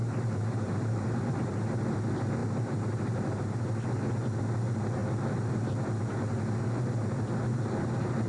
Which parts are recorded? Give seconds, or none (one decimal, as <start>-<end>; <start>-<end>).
1.8-2.4; 3.8-8.3